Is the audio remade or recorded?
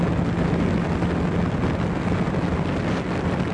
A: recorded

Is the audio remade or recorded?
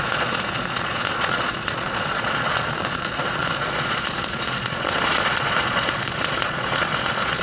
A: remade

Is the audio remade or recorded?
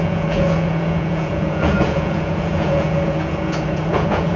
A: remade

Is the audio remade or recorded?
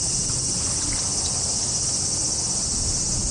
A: recorded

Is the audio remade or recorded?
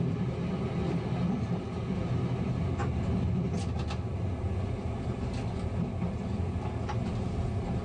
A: recorded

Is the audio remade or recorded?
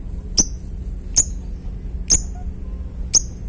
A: recorded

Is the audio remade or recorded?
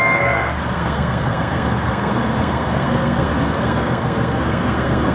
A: remade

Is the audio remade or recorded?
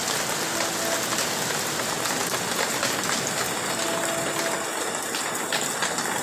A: recorded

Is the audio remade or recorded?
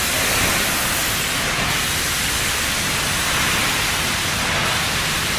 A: recorded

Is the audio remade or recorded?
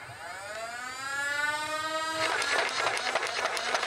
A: remade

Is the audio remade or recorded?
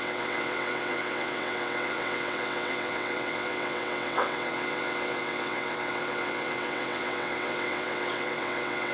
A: remade